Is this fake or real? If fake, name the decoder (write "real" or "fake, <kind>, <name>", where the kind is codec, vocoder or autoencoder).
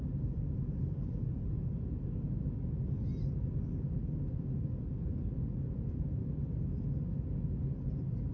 real